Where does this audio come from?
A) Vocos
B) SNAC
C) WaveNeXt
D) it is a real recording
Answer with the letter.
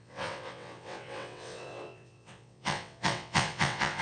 C